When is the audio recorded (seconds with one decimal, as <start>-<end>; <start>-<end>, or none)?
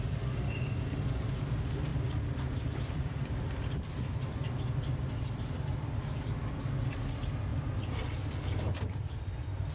0.0-1.9; 3.9-9.7